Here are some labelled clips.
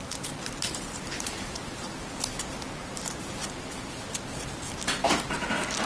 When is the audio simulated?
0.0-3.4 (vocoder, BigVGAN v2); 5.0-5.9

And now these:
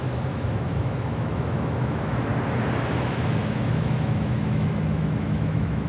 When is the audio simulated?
0.0-2.3 (autoencoder, DAC-VAE); 3.0-5.9

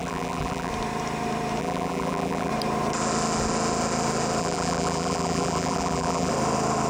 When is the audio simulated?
0.0-0.7 (vocoder, BigVGAN v2); 1.6-2.5; 4.4-6.3

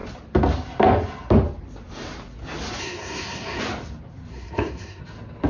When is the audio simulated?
2.8-3.6 (codec, SNAC); 4.3-5.0

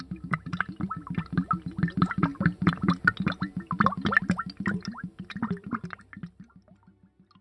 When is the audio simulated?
none

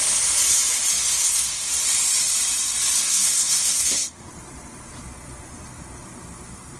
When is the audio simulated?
1.1-1.7 (codec, SNAC); 3.0-4.3

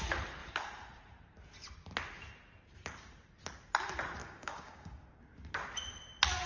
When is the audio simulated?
4.2-5.2 (codec, DAC)